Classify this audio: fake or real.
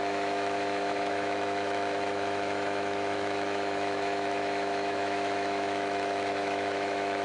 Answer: fake